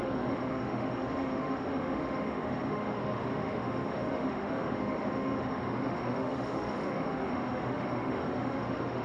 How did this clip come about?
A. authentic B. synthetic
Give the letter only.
B